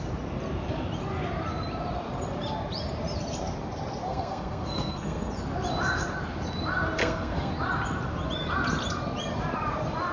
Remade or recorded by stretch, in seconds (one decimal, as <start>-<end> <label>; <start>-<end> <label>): 0.0-4.1 recorded; 4.1-5.3 remade; 5.3-7.0 recorded; 7.0-7.5 remade; 7.5-10.1 recorded